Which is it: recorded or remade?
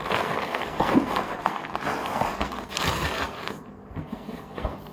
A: remade